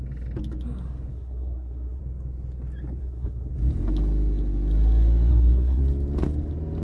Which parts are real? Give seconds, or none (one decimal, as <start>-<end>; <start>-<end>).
0.0-1.1; 2.0-3.0; 3.5-5.3; 5.8-6.8